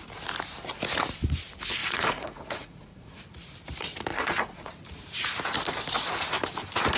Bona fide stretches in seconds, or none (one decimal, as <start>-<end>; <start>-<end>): 0.0-1.8; 3.2-4.1; 4.7-7.0